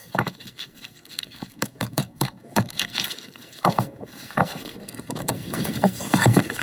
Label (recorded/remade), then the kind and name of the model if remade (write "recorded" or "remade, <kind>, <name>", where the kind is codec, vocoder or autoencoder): remade, codec, SNAC